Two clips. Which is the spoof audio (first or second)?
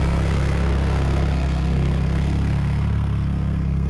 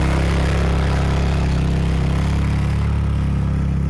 first